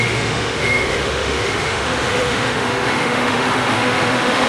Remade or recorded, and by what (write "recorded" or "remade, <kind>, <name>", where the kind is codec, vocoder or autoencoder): remade, autoencoder, DAC-VAE